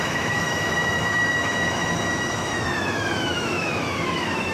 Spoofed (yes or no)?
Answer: yes